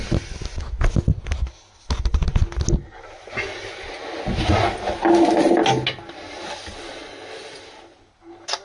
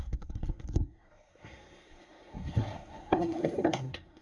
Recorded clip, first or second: first